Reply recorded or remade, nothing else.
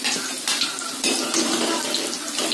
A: recorded